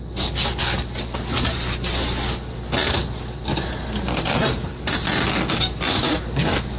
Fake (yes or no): no